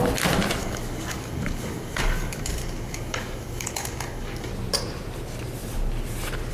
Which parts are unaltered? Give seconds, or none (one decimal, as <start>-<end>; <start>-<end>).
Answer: 0.0-0.6; 4.5-6.5